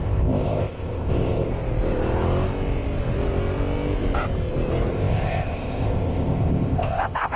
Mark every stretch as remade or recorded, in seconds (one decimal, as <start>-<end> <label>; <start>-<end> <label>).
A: 0.0-1.5 remade; 1.5-4.9 recorded; 4.9-7.4 remade